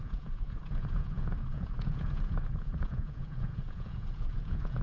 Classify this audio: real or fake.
fake